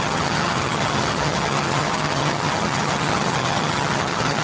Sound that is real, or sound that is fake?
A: fake